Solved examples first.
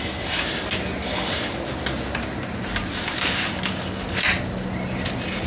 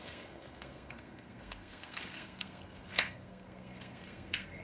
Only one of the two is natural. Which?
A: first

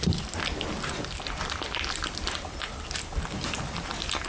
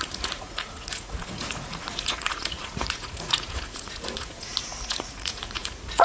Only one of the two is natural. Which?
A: first